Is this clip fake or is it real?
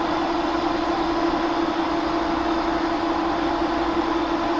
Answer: real